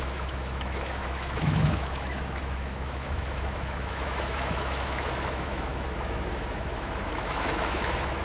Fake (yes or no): yes